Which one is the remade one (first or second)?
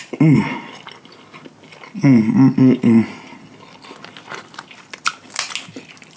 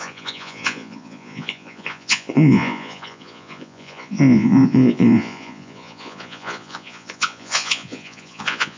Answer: second